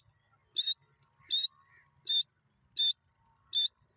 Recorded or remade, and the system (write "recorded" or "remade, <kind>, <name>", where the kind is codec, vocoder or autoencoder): recorded